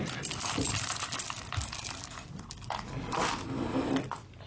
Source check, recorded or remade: recorded